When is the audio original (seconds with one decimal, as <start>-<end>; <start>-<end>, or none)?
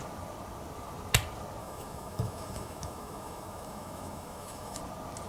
0.0-1.6; 4.8-5.3